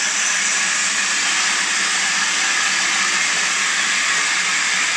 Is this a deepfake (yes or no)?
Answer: no